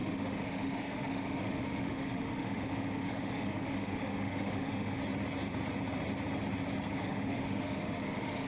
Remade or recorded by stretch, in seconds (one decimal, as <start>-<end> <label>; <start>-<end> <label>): 0.0-5.0 remade; 5.0-7.0 recorded; 7.0-8.5 remade